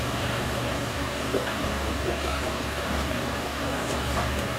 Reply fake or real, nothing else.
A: fake